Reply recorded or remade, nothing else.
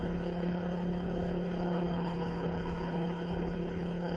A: remade